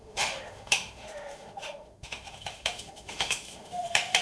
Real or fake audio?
fake